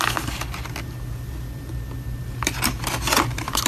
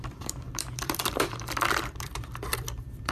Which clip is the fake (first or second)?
second